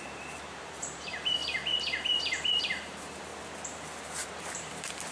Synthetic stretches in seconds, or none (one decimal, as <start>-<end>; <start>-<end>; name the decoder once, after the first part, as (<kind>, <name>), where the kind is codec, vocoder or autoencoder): 0.0-1.4 (vocoder, BigVGAN v2); 2.6-3.3; 4.0-5.1